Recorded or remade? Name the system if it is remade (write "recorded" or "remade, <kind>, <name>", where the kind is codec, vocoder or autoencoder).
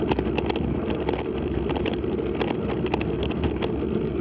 recorded